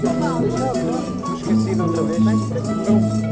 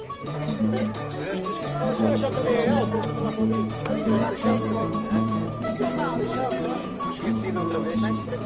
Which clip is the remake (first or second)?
second